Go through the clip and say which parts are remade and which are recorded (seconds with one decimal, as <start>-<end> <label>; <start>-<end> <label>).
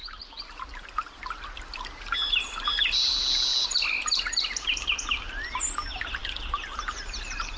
0.0-7.6 recorded